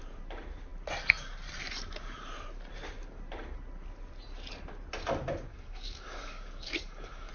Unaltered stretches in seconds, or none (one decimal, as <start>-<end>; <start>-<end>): 0.0-5.5